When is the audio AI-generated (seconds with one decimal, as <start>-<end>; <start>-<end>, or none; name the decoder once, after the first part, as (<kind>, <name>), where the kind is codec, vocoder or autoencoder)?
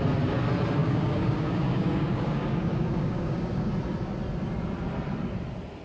0.8-3.7 (codec, DAC)